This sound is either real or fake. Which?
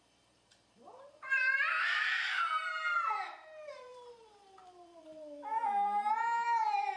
fake